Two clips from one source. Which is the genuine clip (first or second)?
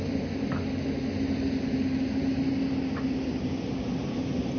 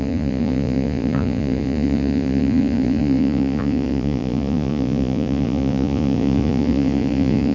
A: first